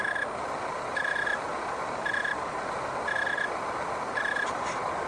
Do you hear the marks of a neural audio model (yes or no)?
no